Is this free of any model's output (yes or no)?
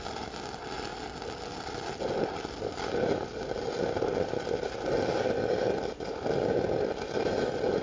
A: yes